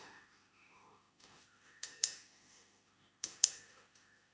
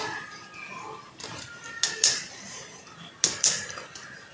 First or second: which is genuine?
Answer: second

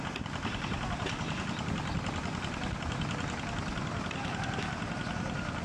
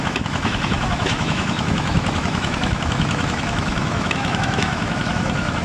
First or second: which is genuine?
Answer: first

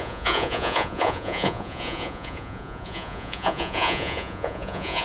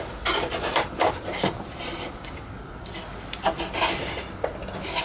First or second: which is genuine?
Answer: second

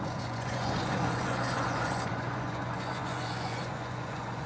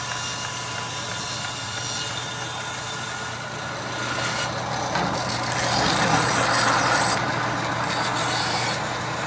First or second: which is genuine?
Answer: second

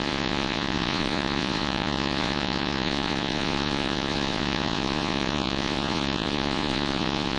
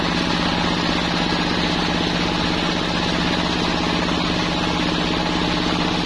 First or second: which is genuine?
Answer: second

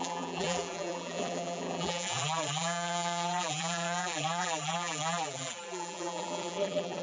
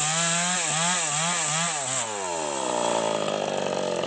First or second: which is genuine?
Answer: second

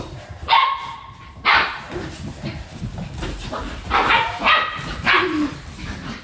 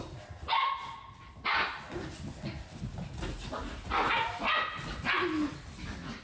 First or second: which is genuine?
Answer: second